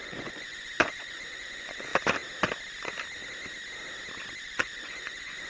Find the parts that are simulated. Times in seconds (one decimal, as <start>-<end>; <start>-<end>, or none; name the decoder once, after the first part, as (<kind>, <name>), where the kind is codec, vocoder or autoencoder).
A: 0.0-1.9 (vocoder, Vocos); 4.4-5.5